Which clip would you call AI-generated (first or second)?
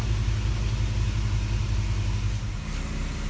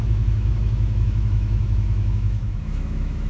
second